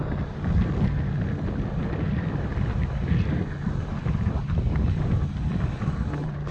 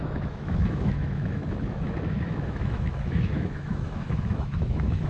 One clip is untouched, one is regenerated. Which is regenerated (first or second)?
second